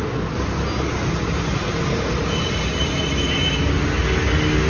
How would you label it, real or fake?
real